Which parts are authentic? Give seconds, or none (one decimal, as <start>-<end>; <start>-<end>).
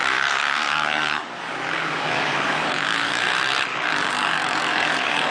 3.2-3.7